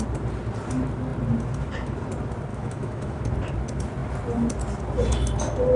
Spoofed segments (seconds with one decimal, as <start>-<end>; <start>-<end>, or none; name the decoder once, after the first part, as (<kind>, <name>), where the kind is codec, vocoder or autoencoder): 2.5-3.2 (autoencoder, DAC-VAE)

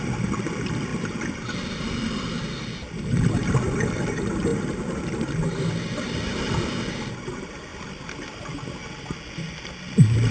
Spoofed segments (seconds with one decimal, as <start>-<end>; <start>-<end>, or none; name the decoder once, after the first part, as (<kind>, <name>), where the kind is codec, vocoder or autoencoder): none

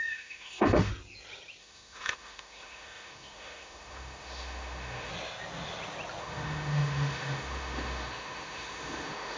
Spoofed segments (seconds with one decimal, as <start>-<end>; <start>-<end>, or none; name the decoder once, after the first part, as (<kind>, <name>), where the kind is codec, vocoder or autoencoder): 0.0-0.9 (autoencoder, DAC-VAE); 1.6-5.1; 6.2-9.4

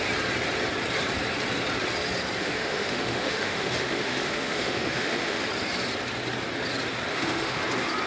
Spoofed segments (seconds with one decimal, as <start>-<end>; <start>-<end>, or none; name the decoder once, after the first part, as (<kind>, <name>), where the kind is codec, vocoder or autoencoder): 2.4-5.4 (autoencoder, DAC-VAE); 7.1-7.6

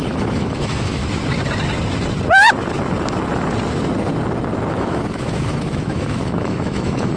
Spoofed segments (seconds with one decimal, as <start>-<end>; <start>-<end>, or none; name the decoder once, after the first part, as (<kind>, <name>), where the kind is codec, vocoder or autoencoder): 0.0-1.0 (autoencoder, DAC-VAE); 4.7-7.2